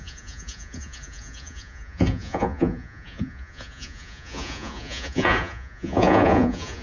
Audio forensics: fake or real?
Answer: fake